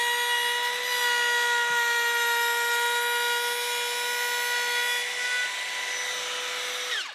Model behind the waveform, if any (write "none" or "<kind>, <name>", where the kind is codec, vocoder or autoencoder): none